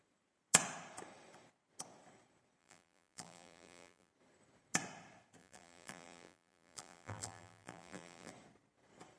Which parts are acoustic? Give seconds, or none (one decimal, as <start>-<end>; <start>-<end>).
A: 0.0-2.6; 4.1-5.4; 8.3-9.2